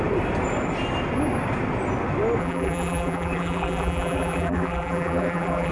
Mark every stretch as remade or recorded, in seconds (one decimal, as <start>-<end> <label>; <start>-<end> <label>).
0.0-2.4 recorded; 2.4-5.7 remade